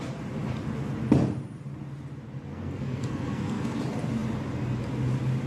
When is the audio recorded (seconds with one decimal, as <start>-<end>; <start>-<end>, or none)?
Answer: 0.0-2.5; 3.8-5.5